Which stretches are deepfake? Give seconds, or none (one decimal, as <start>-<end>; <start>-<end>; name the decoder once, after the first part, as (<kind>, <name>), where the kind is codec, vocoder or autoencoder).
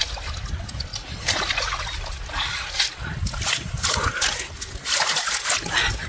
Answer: none